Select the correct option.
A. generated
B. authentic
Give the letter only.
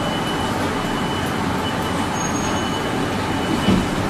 B